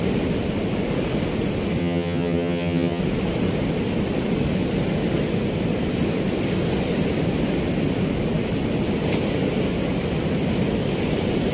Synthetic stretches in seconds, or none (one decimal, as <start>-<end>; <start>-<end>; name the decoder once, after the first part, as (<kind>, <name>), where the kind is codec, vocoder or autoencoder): 1.8-3.0 (vocoder, HiFi-GAN)